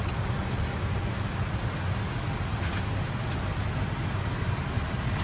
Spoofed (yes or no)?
no